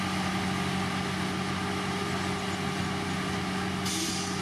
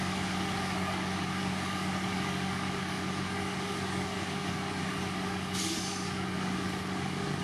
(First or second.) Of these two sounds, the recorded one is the first